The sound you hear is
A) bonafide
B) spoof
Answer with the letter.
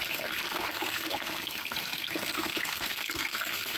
B